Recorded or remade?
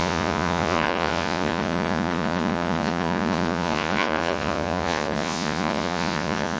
remade